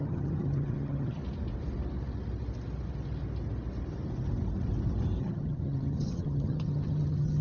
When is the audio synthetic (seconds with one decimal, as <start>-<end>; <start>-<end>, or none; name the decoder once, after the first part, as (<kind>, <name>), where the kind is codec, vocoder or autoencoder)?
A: 0.0-1.2 (vocoder, HiFi-GAN); 5.2-7.4